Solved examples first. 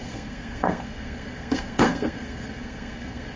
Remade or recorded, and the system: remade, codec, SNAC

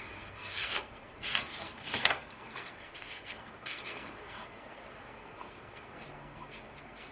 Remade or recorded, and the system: remade, codec, SNAC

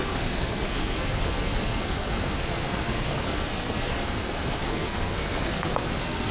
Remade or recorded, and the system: remade, codec, SNAC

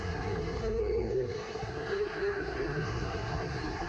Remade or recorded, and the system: remade, codec, SNAC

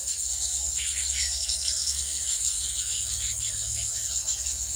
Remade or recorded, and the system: remade, codec, SNAC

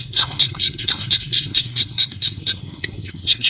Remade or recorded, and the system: remade, codec, SNAC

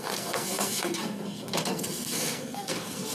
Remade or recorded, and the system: remade, codec, SNAC